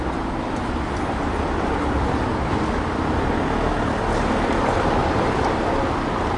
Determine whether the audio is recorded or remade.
recorded